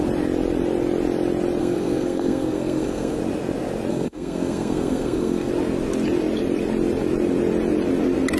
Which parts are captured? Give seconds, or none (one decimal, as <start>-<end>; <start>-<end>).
0.0-1.6; 3.2-3.9; 5.5-8.4